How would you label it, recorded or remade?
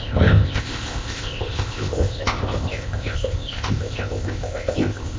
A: remade